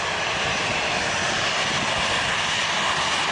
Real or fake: real